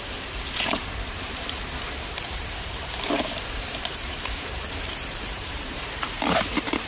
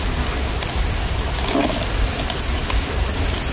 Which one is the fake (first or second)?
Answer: first